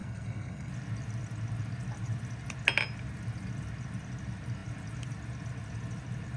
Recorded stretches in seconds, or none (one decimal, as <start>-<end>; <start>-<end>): 0.7-6.4